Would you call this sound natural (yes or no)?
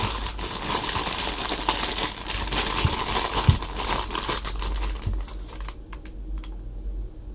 yes